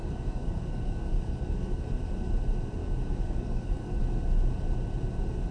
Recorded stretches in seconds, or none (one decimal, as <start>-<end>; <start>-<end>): 1.8-2.8; 4.0-5.5